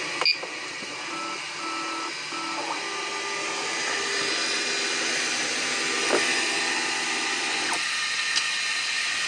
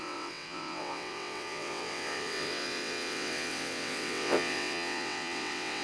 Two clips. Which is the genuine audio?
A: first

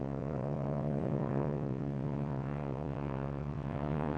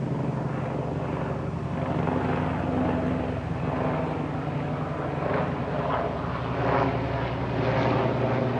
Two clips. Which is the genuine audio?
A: second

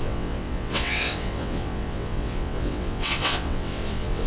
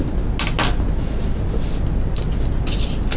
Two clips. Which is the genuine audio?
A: second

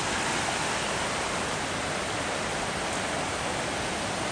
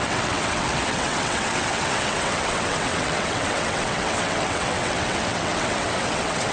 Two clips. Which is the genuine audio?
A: first